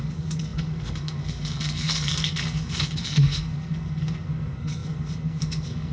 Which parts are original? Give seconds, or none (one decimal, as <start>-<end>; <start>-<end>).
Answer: none